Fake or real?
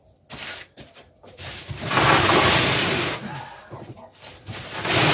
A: real